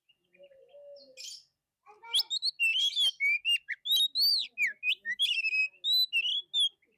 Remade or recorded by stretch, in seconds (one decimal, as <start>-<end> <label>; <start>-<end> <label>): 0.0-4.9 recorded; 4.9-5.6 remade; 5.6-7.0 recorded